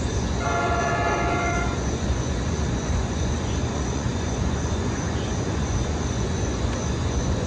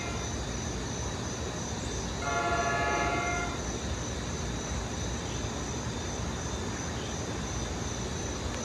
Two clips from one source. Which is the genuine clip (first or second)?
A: second